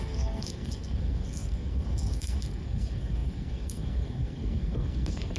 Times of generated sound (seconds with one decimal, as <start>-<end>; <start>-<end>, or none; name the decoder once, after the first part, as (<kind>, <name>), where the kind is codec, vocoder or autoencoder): 0.0-5.4 (codec, SNAC)

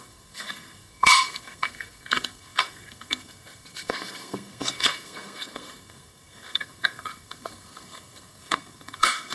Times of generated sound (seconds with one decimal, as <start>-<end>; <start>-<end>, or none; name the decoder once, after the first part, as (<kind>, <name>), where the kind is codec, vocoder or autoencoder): 0.0-9.3 (codec, SNAC)

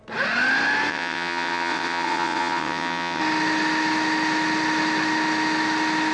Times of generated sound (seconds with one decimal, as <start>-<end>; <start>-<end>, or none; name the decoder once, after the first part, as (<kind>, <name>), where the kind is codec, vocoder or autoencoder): 0.9-3.2 (vocoder, WaveNeXt)

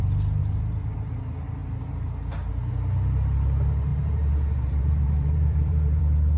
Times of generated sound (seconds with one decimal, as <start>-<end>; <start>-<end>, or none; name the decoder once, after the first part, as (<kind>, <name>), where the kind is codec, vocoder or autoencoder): 0.4-1.2 (vocoder, BigVGAN v2); 1.6-2.5; 3.9-6.0

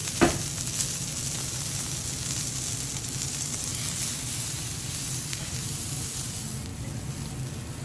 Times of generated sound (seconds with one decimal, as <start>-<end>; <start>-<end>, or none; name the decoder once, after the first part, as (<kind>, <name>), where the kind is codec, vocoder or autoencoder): none

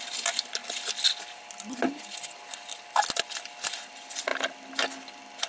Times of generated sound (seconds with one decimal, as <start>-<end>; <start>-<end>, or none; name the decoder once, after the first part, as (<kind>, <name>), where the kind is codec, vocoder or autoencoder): none

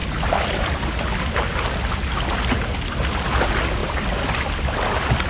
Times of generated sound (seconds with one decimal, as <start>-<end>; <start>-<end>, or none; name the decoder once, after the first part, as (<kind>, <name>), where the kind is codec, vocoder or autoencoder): none

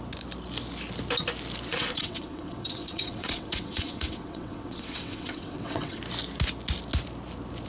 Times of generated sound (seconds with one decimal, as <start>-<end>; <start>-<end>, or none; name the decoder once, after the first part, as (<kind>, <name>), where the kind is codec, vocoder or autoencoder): 1.7-6.0 (vocoder, WaveNeXt)